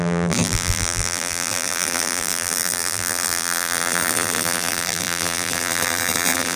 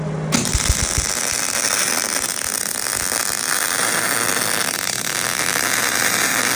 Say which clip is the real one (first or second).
second